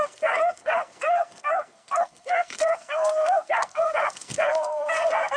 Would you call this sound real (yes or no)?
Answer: no